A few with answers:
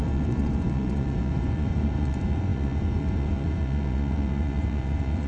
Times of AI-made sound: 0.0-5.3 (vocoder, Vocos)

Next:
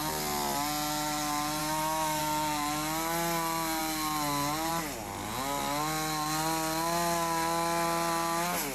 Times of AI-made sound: 1.6-2.2 (autoencoder, DAC-VAE)

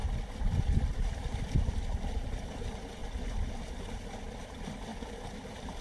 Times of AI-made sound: 0.0-1.5 (vocoder, BigVGAN v2)

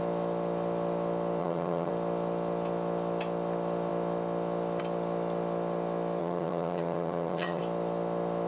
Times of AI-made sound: 1.4-1.9 (vocoder, HiFi-GAN); 6.2-7.6

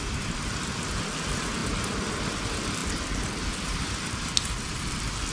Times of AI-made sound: none